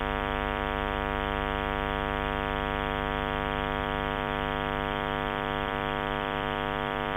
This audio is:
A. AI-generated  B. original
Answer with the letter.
A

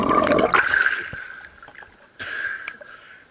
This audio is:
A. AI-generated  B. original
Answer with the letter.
B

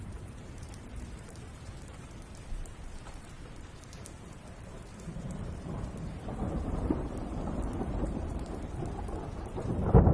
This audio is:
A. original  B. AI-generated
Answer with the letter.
B